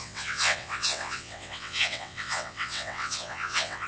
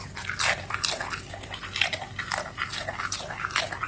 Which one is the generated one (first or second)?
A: first